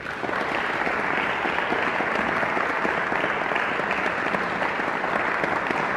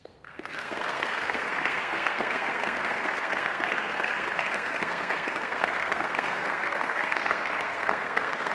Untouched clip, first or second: first